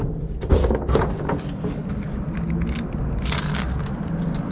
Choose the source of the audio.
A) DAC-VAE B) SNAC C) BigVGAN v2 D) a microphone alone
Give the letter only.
D